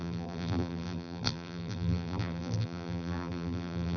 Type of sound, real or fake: fake